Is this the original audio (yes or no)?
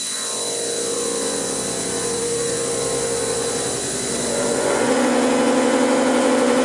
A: no